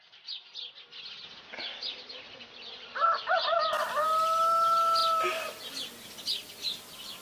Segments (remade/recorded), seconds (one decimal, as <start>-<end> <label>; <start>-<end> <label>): 0.0-7.2 recorded